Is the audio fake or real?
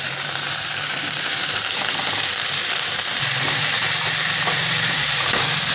fake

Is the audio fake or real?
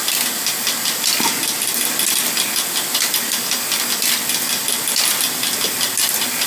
real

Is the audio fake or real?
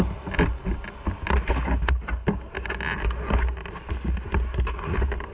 real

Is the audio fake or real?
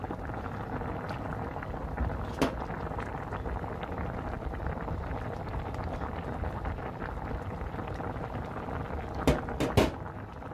real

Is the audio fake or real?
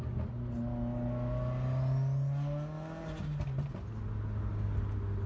real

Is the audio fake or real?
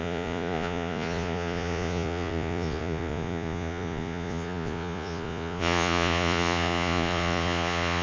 fake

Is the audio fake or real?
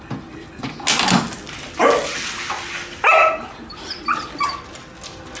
real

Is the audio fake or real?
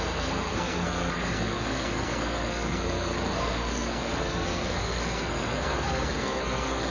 fake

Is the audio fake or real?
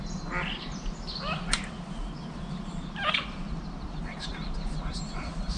real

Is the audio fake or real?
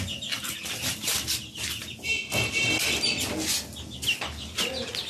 real